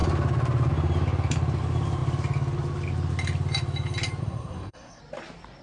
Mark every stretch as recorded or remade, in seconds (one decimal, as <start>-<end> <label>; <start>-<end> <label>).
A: 0.0-4.2 recorded; 4.2-5.0 remade; 5.0-5.6 recorded

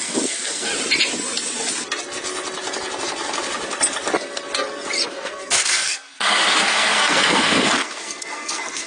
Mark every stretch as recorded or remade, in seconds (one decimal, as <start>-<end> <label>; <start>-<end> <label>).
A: 0.0-0.7 remade; 0.7-5.1 recorded; 5.1-8.9 remade

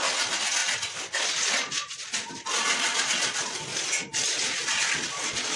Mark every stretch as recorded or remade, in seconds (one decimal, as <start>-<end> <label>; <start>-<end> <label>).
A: 0.0-5.6 recorded

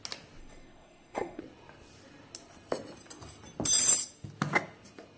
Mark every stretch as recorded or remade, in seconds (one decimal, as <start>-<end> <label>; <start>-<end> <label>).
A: 0.0-0.4 recorded; 0.4-1.4 remade; 1.4-5.2 recorded

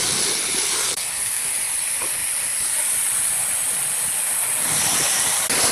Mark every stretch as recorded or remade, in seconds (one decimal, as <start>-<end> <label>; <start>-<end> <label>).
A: 0.0-0.8 recorded; 0.8-1.5 remade; 1.5-5.7 recorded

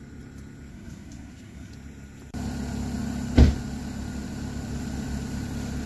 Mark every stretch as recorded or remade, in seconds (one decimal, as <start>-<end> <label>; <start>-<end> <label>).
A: 0.0-0.7 recorded; 0.7-1.7 remade; 1.7-5.9 recorded

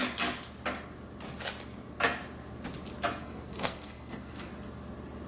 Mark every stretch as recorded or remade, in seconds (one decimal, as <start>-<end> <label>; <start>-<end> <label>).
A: 0.0-3.2 recorded; 3.2-4.5 remade; 4.5-5.3 recorded